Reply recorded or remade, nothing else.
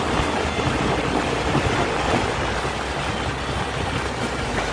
recorded